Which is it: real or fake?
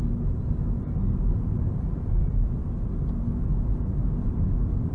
real